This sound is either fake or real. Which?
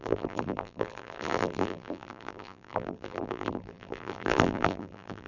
fake